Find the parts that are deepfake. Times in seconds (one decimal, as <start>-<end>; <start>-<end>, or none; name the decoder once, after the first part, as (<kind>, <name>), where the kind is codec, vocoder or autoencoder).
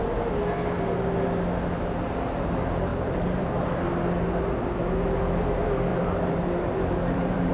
2.9-3.8 (vocoder, BigVGAN v2); 5.9-7.5